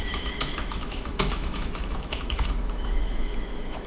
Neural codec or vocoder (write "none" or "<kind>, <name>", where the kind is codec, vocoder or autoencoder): autoencoder, DAC-VAE